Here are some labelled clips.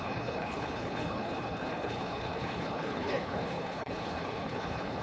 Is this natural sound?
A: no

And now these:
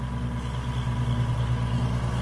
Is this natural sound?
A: yes